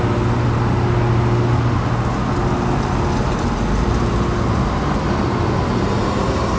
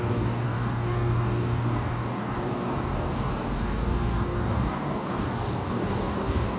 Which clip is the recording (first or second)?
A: first